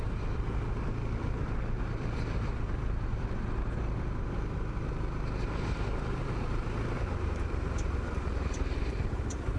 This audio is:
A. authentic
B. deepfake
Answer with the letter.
B